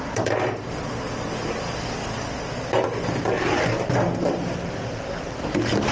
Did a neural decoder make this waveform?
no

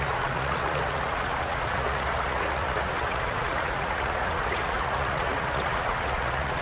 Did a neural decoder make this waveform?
yes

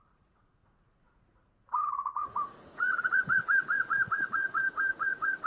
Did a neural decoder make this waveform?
yes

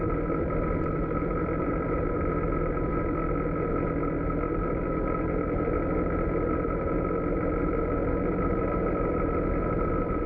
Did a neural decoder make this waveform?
no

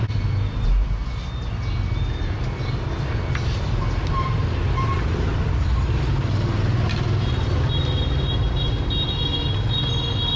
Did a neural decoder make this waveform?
no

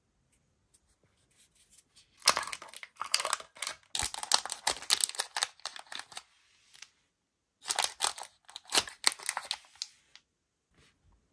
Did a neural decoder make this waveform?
no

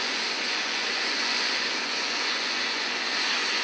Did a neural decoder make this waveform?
yes